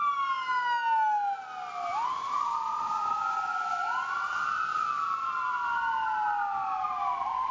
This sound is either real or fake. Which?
real